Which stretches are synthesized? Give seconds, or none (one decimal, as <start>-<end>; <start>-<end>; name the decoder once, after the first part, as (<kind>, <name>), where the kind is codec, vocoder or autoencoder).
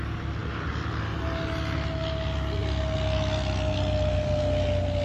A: none